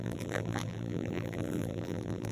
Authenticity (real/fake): fake